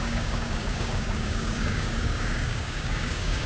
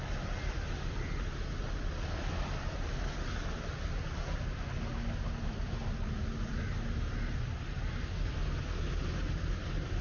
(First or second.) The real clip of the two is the second